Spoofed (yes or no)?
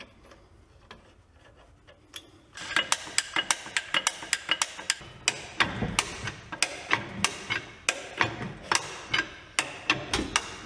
no